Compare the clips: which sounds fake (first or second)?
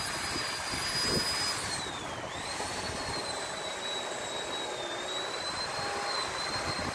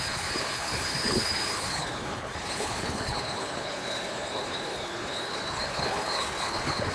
second